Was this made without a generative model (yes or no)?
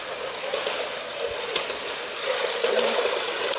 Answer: yes